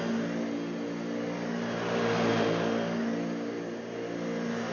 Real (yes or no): yes